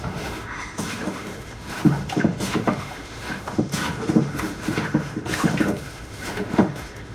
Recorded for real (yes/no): no